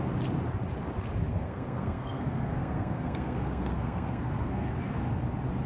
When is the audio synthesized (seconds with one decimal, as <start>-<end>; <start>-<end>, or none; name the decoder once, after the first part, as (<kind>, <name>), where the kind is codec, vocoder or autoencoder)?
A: 1.3-4.7 (codec, SNAC)

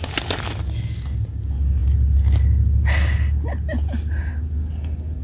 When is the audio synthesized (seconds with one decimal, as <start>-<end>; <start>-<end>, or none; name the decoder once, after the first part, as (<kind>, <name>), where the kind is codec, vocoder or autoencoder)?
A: none

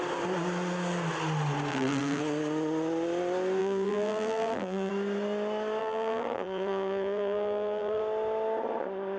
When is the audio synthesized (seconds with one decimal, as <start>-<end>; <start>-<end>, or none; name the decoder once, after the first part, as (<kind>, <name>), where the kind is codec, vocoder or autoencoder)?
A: 1.7-2.2 (vocoder, BigVGAN v2); 3.6-4.9; 5.8-8.0